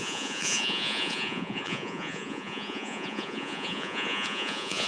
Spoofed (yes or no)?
yes